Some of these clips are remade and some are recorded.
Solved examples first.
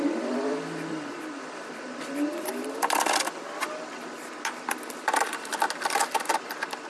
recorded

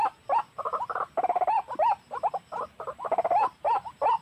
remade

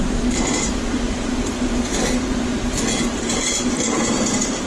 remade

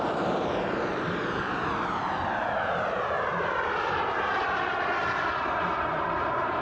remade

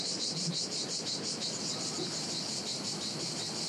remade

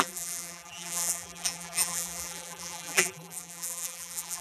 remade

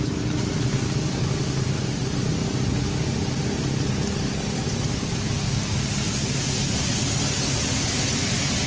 recorded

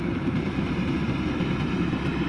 remade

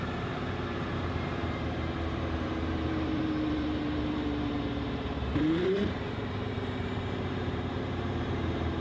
remade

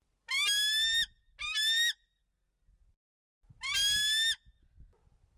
recorded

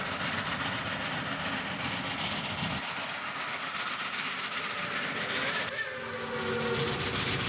recorded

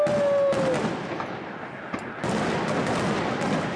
recorded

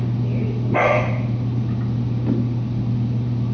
remade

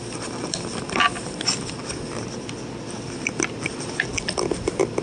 recorded